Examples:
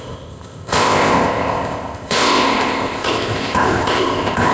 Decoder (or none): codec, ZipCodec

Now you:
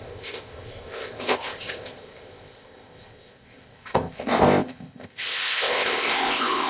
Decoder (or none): codec, ZipCodec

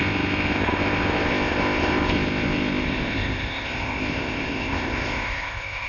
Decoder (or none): codec, ZipCodec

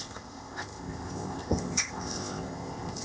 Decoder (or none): codec, ZipCodec